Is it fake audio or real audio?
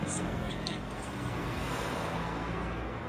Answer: fake